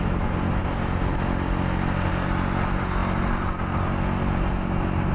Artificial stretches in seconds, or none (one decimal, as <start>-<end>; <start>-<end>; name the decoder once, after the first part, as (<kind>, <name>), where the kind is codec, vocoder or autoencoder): none